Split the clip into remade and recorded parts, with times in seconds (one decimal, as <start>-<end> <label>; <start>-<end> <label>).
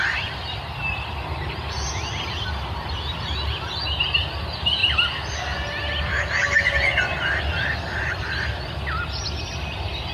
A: 0.0-10.1 recorded